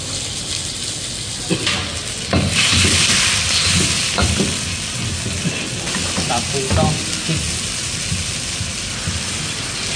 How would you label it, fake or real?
real